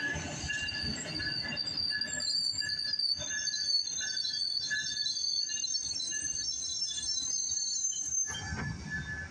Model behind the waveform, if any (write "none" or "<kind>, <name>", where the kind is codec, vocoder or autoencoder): none